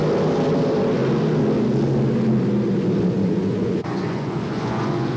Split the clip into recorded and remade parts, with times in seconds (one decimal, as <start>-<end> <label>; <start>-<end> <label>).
0.0-3.1 recorded; 3.1-5.2 remade